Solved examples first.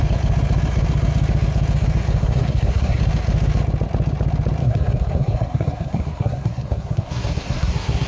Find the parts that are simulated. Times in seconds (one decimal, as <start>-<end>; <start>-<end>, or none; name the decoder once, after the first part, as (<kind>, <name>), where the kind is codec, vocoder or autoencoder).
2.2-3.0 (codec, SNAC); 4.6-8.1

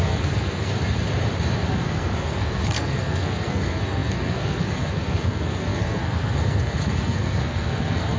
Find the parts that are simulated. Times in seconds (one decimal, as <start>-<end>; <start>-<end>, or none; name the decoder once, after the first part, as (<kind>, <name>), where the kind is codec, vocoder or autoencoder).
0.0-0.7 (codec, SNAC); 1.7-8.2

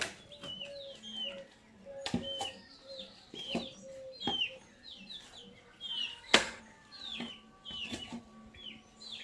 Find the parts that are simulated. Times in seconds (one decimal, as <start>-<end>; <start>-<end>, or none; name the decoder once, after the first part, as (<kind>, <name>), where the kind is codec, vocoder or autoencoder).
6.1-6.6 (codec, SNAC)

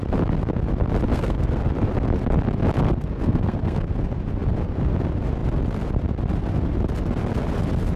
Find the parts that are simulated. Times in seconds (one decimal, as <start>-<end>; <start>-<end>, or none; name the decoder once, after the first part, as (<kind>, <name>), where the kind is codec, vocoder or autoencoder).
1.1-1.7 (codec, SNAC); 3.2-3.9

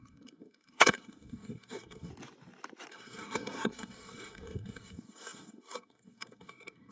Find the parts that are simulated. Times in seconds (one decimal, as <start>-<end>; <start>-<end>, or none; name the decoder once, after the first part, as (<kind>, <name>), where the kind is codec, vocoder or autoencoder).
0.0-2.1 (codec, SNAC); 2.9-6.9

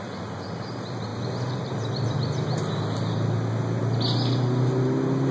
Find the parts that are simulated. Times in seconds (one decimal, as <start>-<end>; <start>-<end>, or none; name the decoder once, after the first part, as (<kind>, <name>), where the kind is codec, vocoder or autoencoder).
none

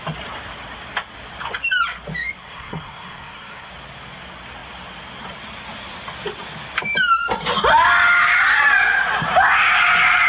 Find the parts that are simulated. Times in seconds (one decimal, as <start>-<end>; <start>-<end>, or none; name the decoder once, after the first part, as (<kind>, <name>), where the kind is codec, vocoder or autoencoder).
2.4-3.7 (codec, SNAC)

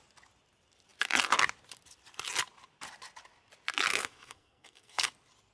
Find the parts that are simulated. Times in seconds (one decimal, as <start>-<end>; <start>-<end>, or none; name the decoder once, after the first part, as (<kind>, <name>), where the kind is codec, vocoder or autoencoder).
3.9-5.1 (codec, SNAC)